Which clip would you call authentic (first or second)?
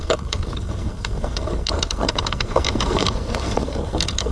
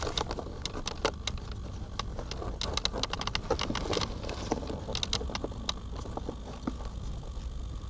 second